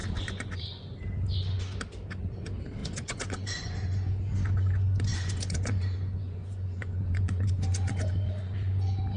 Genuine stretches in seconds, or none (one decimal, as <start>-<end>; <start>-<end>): 1.0-2.8; 4.1-5.1; 8.3-9.2